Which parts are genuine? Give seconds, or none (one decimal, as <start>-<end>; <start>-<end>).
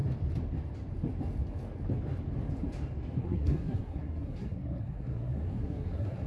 0.0-3.2